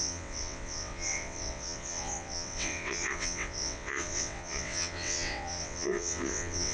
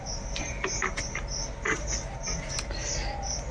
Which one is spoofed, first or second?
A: first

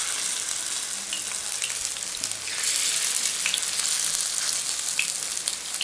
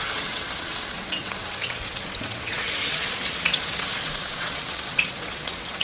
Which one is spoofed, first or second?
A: second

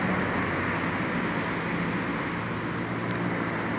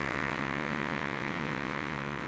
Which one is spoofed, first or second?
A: second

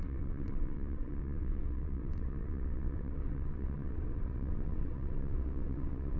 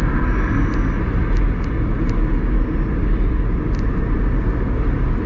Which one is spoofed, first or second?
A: first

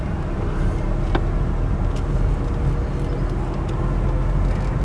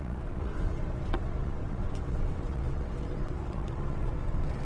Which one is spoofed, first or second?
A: second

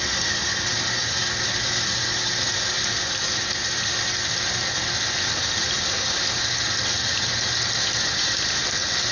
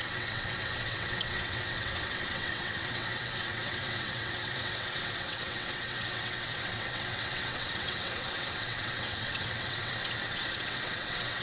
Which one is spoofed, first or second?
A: second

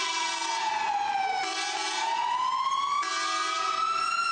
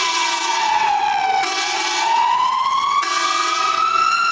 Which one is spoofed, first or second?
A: second